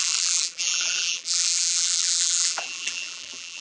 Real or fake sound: fake